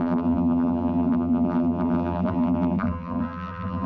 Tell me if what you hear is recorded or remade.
remade